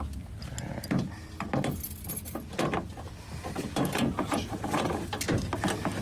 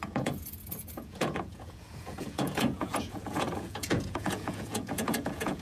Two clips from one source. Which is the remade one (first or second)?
second